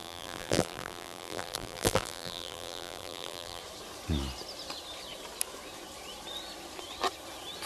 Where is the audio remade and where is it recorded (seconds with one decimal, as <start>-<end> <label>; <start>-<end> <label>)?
0.0-3.6 remade; 3.6-7.7 recorded